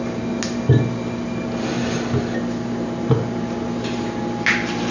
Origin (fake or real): real